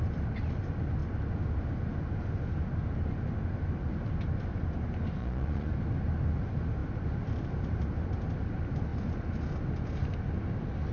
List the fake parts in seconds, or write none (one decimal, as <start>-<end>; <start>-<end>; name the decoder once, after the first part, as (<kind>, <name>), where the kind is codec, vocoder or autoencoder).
5.2-5.7 (vocoder, Vocos)